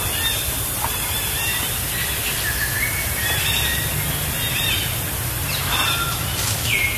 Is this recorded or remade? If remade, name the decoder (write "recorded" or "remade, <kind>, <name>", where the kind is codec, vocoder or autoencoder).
recorded